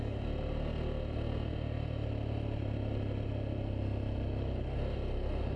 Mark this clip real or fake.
real